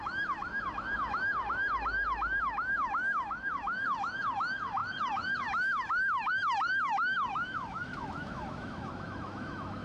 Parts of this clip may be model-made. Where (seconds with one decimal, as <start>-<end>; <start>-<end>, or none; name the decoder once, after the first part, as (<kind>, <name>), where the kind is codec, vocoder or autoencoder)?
0.0-9.8 (autoencoder, DAC-VAE)